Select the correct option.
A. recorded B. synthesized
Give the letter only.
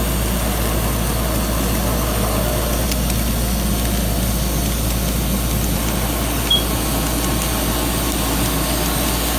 A